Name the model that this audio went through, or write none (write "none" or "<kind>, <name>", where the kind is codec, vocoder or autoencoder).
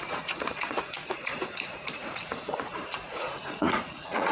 vocoder, Vocos